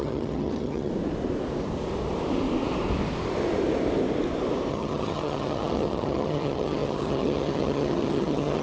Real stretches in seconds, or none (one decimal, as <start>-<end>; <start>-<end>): 0.9-4.7